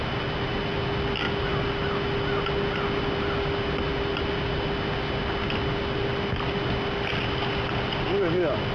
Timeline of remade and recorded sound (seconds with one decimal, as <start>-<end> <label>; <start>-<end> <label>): 0.0-8.7 recorded